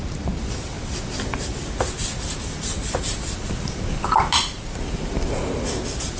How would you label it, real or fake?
real